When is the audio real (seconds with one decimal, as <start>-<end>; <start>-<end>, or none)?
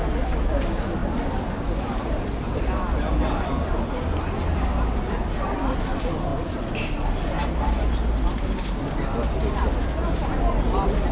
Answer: 0.0-6.3; 7.3-11.1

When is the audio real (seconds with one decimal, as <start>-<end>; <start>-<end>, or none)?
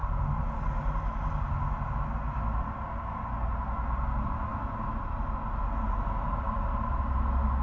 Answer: 0.0-7.6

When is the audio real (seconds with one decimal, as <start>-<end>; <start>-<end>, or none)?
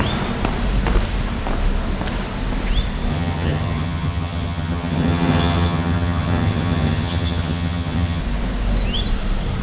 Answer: 0.0-3.1; 8.2-9.6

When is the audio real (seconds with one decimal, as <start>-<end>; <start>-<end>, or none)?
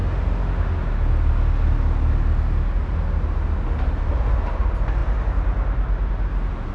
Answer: 0.0-6.7